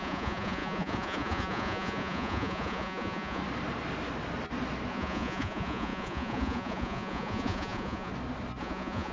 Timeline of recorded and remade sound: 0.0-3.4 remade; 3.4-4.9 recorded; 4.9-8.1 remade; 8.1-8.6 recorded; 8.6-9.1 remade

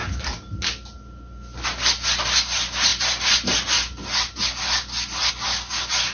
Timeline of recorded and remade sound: 0.0-6.1 recorded

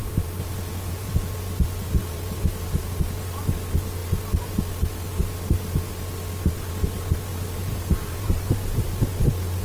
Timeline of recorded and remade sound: 0.0-2.4 remade; 2.4-7.3 recorded; 7.3-9.1 remade; 9.1-9.6 recorded

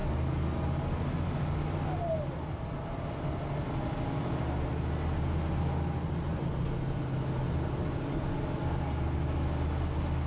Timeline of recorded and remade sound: 0.0-10.3 recorded